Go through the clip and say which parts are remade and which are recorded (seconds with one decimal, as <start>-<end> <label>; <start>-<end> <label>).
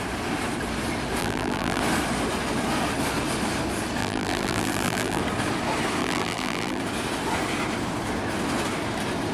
0.0-1.2 recorded; 1.2-1.8 remade; 1.8-4.0 recorded; 4.0-5.2 remade; 5.2-6.0 recorded; 6.0-6.8 remade; 6.8-9.3 recorded